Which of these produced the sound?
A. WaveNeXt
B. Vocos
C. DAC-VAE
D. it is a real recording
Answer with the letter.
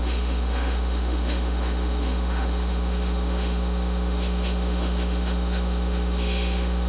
C